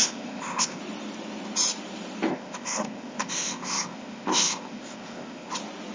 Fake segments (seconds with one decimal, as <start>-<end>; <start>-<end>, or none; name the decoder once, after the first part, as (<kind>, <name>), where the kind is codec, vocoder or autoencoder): 0.0-0.8 (codec, ZipCodec); 2.3-5.5